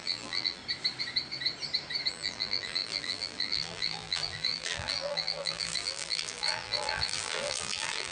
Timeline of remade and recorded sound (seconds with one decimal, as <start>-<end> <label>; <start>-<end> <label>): 0.0-0.6 remade; 0.6-2.1 recorded; 2.1-8.1 remade